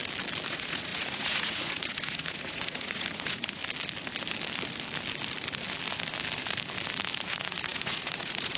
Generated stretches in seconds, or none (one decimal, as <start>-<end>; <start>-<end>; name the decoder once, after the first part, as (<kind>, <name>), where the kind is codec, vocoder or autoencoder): 0.5-3.6 (vocoder, Vocos); 7.3-8.6